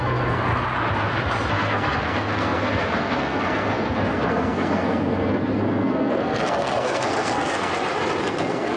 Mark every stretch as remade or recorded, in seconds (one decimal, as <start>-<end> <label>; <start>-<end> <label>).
0.0-0.5 remade; 0.5-1.5 recorded; 1.5-7.7 remade; 7.7-8.2 recorded; 8.2-8.8 remade